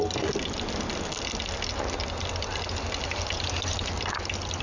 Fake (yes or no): no